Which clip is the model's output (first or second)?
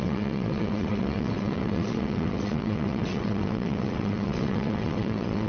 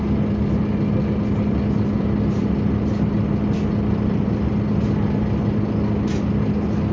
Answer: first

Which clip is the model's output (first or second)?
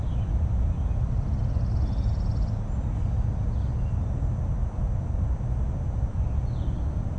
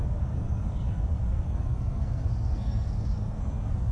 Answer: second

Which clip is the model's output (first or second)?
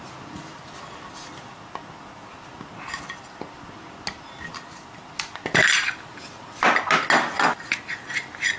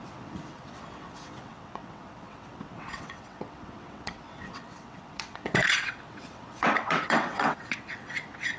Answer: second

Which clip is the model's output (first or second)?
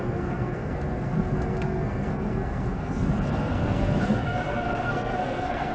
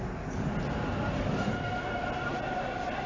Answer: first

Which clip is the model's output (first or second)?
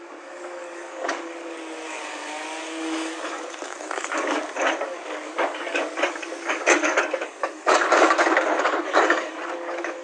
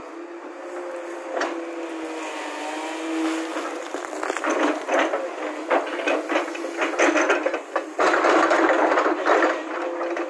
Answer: first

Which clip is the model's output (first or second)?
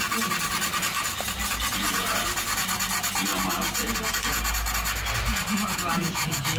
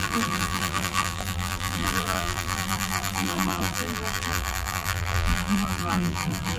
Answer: second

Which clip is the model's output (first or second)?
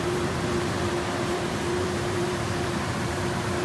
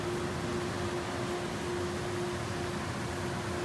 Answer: first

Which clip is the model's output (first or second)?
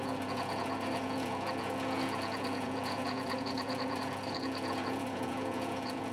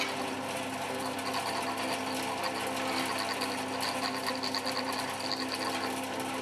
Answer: first